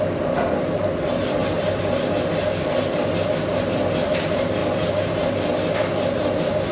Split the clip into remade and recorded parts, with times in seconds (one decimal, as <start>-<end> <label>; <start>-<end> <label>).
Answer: 0.0-6.7 recorded